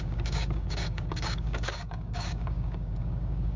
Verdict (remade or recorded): remade